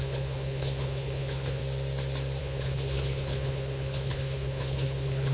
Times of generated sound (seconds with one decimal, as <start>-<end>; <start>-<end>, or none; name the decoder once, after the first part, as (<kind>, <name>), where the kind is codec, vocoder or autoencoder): 0.0-1.6 (codec, HILCodec); 2.4-5.3